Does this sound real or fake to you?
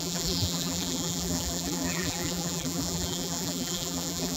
fake